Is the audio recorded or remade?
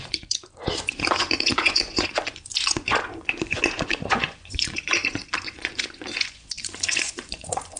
remade